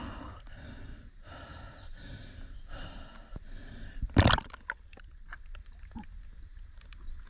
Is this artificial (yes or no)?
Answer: no